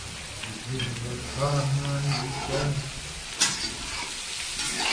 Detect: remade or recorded recorded